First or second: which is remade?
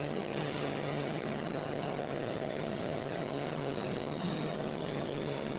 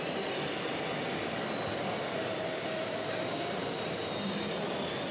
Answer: first